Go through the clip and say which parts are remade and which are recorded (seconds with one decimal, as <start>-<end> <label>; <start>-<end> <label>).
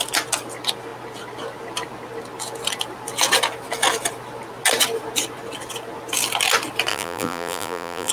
0.0-6.9 recorded; 6.9-8.1 remade